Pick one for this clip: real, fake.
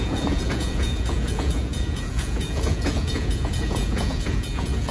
fake